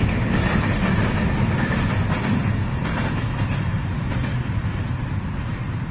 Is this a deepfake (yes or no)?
no